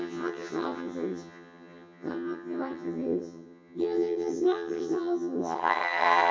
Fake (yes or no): yes